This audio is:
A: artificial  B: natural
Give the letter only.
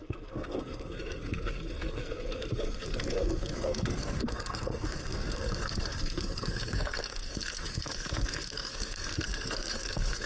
A